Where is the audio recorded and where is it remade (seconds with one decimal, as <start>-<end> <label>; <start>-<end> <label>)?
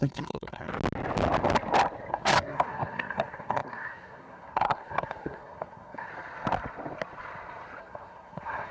0.0-0.7 remade; 0.7-2.1 recorded; 2.1-6.1 remade; 6.1-7.8 recorded; 7.8-8.7 remade